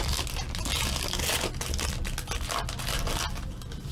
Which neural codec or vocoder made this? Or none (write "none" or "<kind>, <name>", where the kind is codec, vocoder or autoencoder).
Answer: none